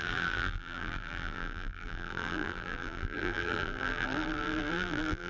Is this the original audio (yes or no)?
no